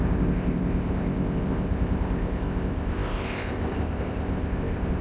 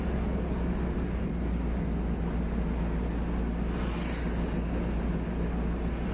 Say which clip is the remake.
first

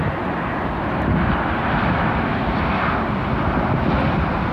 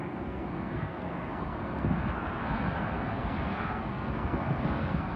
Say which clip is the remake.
second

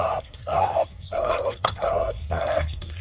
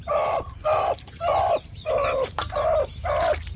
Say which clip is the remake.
first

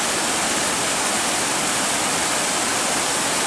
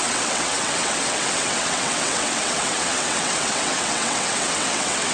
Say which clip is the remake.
second